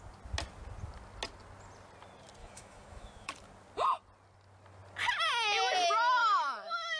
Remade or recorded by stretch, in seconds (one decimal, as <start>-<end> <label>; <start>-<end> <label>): 0.0-2.4 recorded; 2.4-3.3 remade; 3.3-6.2 recorded; 6.2-7.0 remade